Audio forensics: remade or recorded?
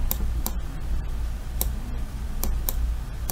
recorded